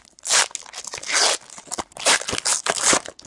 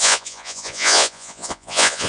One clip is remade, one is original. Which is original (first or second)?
first